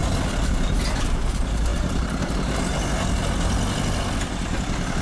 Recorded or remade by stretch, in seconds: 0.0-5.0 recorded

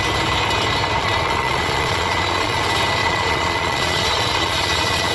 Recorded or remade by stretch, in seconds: 0.0-1.0 recorded; 1.0-2.6 remade; 2.6-3.0 recorded; 3.0-5.1 remade

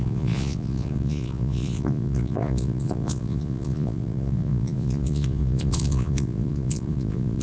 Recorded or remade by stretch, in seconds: 0.0-7.4 remade

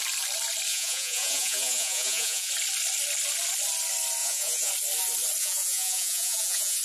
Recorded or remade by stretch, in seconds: 0.0-0.7 recorded; 0.7-2.5 remade; 2.5-4.2 recorded; 4.2-4.7 remade; 4.7-5.4 recorded; 5.4-6.8 remade

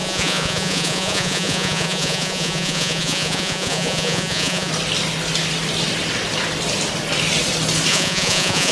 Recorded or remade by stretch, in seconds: 0.0-4.7 remade; 4.7-7.9 recorded; 7.9-8.7 remade